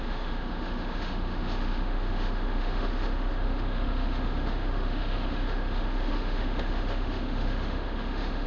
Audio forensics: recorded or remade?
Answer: remade